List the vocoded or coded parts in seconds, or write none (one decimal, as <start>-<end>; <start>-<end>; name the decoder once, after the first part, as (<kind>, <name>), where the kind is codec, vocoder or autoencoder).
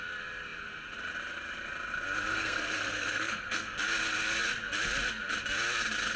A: 2.3-3.8 (codec, SNAC)